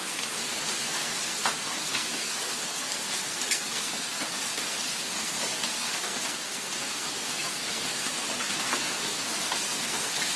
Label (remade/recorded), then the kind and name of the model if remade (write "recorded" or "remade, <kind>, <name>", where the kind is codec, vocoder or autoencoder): remade, codec, SNAC